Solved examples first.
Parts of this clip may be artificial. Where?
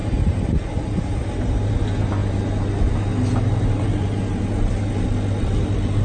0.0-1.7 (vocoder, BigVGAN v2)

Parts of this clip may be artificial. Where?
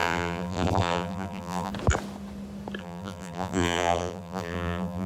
0.0-1.7 (vocoder, BigVGAN v2); 2.8-5.1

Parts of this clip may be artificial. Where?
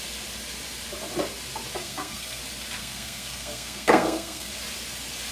1.8-2.4 (codec, SNAC); 2.8-4.5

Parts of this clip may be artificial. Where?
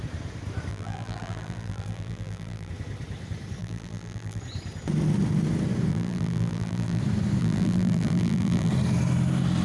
0.7-2.7 (vocoder, BigVGAN v2); 3.6-4.4; 5.9-7.0; 7.4-8.7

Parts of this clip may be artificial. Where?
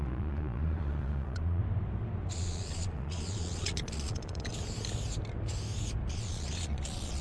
0.0-1.6 (vocoder, Vocos); 2.3-4.5; 6.1-7.2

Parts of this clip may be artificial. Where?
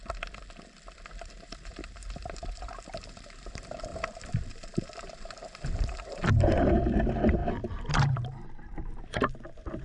1.1-7.4 (vocoder, BigVGAN v2); 7.9-9.8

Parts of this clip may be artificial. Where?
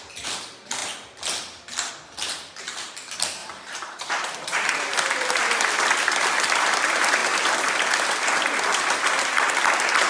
3.4-5.7 (vocoder, BigVGAN v2)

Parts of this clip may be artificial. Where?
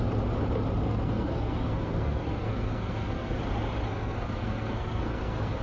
0.8-3.4 (codec, SNAC); 3.9-5.6